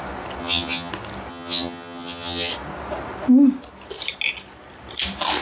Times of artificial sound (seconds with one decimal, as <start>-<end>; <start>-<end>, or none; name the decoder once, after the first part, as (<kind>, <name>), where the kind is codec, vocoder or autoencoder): 0.4-0.9 (vocoder, HiFi-GAN); 1.3-2.5